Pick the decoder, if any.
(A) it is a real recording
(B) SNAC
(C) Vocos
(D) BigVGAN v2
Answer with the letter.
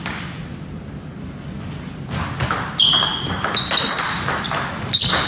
A